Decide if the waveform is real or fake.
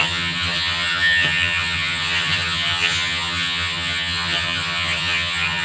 fake